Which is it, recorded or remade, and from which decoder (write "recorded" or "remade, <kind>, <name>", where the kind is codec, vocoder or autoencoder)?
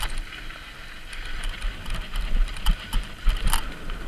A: recorded